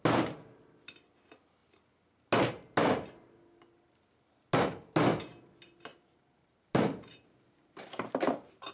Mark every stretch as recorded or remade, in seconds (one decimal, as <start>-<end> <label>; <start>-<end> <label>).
0.0-5.9 recorded; 5.9-8.7 remade